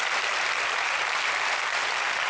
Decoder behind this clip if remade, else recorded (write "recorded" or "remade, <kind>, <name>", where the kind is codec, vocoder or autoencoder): recorded